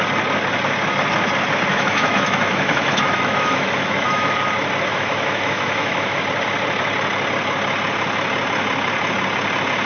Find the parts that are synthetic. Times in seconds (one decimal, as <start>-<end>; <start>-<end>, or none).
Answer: 1.7-4.5; 4.9-6.2